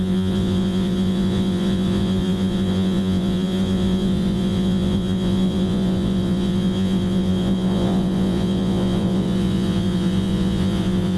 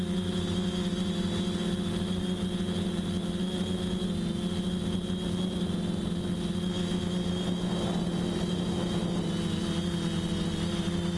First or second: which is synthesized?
first